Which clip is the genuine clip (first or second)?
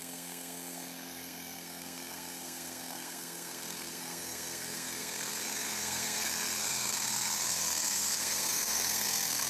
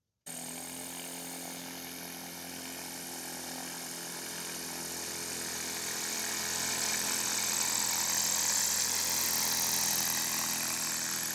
second